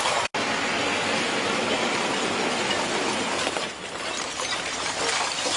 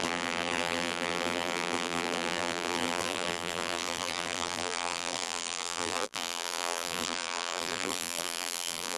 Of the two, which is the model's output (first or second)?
second